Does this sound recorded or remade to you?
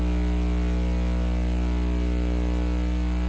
recorded